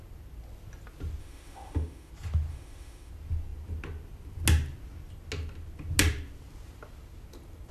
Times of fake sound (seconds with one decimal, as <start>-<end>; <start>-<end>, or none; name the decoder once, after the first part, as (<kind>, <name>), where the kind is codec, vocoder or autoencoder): 1.2-2.1 (autoencoder, DAC-VAE); 2.5-3.1